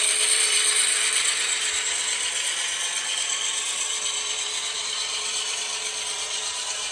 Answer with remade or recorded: remade